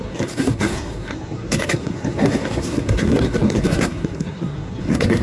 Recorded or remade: remade